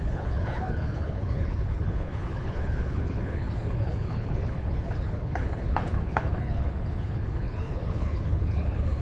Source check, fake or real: fake